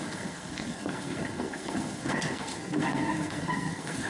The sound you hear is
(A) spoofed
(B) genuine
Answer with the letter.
A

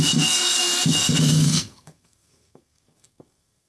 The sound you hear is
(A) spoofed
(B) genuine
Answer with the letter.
A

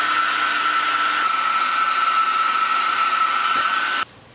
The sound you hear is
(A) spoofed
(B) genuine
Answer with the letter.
B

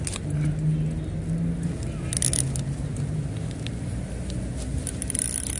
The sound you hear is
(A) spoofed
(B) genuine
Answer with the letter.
B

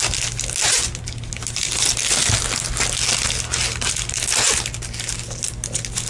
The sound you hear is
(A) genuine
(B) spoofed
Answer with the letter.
A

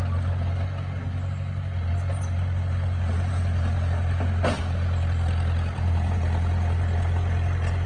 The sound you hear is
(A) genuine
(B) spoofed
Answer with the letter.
A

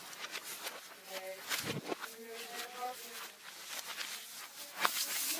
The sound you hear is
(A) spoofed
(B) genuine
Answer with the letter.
B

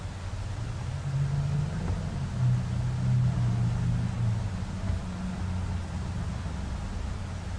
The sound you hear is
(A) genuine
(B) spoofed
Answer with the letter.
A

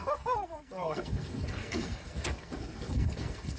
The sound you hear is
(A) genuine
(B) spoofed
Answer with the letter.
B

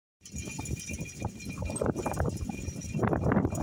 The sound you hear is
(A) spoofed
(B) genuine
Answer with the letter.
B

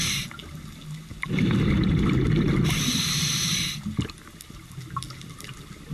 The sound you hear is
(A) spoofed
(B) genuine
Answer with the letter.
B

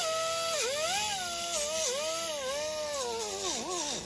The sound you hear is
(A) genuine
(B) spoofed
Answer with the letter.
A